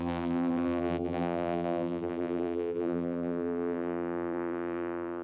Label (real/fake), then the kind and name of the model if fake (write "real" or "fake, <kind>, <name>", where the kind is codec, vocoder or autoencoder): fake, vocoder, BigVGAN v2